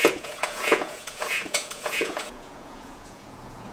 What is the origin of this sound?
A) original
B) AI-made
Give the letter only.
B